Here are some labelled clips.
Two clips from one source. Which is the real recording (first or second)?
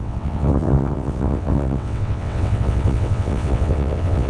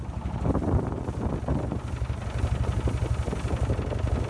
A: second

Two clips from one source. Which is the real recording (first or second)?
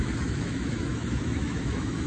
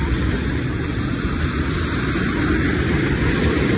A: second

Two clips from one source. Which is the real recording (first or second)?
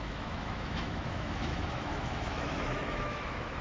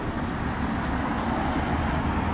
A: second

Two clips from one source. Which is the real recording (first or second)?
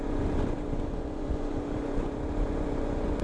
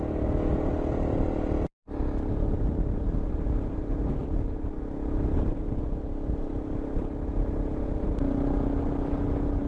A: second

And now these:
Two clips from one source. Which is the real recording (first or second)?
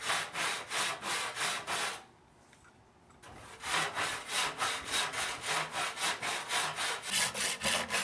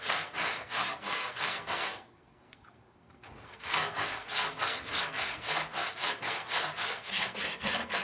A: first